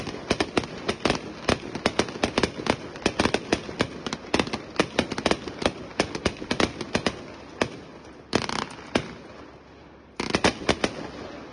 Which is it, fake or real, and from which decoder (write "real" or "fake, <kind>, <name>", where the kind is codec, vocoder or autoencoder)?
real